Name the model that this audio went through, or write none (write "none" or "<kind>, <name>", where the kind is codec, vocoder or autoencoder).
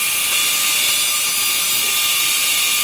none